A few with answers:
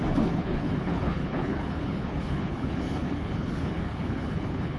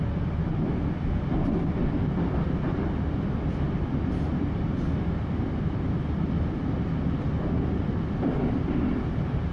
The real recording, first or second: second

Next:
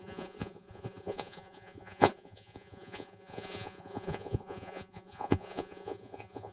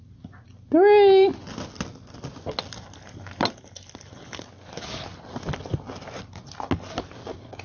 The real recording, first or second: second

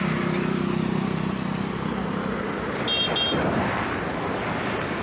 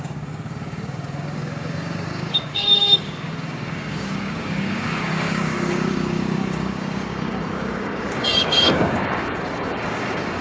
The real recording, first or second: first